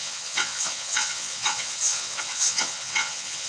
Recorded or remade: remade